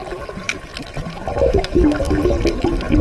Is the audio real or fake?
real